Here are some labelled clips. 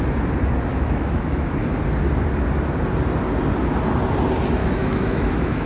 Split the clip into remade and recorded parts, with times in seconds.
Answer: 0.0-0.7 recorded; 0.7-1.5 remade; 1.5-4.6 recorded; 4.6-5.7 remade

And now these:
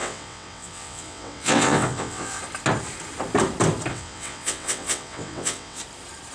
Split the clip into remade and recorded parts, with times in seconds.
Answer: 0.0-2.4 remade; 2.4-3.9 recorded; 3.9-5.8 remade; 5.8-6.3 recorded

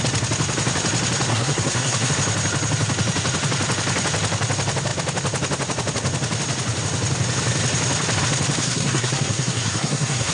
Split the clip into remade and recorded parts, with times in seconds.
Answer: 0.0-1.3 recorded; 1.3-2.1 remade; 2.1-8.6 recorded; 8.6-10.3 remade

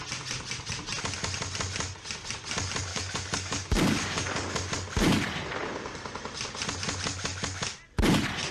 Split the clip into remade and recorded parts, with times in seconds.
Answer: 0.0-2.9 recorded; 2.9-4.7 remade; 4.7-8.5 recorded

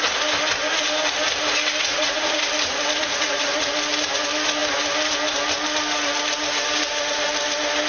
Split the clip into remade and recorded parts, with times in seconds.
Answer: 0.0-1.9 recorded; 1.9-2.4 remade; 2.4-3.0 recorded; 3.0-3.7 remade; 3.7-7.9 recorded

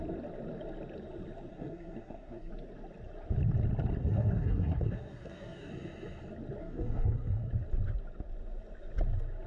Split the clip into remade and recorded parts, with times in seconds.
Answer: 0.0-1.5 recorded; 1.5-2.5 remade; 2.5-4.0 recorded; 4.0-5.7 remade; 5.7-6.6 recorded; 6.6-7.5 remade; 7.5-9.5 recorded

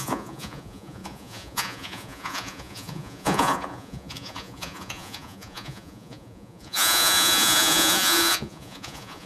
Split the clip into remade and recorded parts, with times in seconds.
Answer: 0.0-9.3 remade

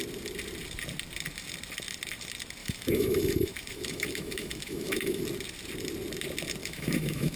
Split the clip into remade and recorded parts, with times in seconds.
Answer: 0.0-2.6 recorded; 2.6-5.2 remade; 5.2-6.6 recorded; 6.6-7.4 remade